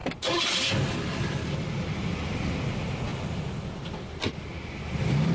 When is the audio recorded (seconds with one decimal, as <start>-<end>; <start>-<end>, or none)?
0.0-5.3